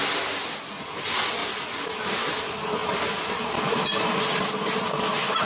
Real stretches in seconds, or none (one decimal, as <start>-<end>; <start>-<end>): 0.0-5.5